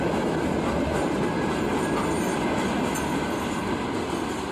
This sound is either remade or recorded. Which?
recorded